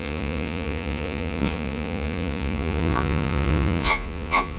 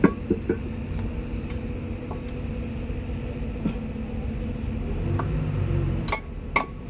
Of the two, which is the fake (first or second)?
first